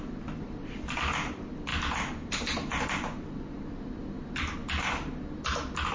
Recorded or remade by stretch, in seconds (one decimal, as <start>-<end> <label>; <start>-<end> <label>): 0.0-1.7 recorded; 1.7-3.3 remade; 3.3-5.9 recorded